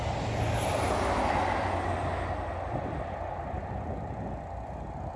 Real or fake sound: real